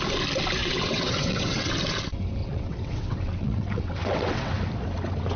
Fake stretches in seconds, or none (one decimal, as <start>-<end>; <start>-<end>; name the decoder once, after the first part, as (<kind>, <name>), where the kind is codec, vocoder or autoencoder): 0.6-1.7 (vocoder, WaveNeXt); 2.4-4.5